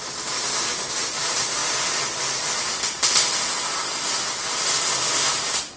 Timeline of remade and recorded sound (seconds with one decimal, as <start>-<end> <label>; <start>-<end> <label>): 0.0-1.6 remade; 1.6-5.1 recorded; 5.1-5.8 remade